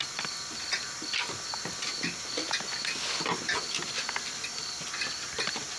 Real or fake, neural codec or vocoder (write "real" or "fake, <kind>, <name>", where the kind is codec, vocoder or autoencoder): real